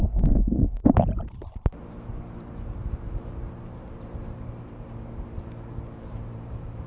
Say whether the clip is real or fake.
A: fake